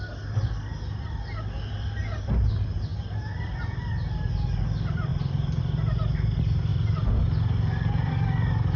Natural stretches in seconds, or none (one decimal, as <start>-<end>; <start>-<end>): 0.0-5.1; 5.6-8.8

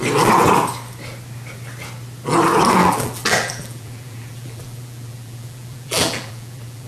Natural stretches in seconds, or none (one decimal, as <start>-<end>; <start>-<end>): 0.0-2.8

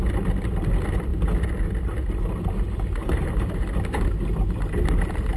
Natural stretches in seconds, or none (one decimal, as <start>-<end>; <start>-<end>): 0.0-3.0; 3.6-5.4

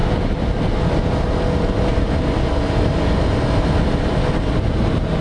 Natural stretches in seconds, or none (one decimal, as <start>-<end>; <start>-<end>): 0.0-5.2

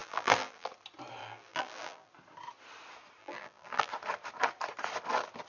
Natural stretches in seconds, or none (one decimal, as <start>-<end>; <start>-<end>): 0.7-1.2; 2.1-3.2; 3.9-5.5